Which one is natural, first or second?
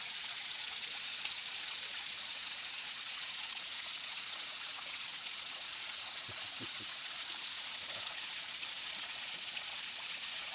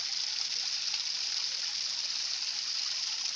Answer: second